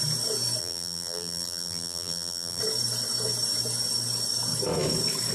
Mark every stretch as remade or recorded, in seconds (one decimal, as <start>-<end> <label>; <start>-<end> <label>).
0.0-0.6 recorded; 0.6-2.6 remade; 2.6-5.3 recorded